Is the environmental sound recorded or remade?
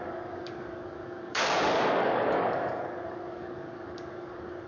remade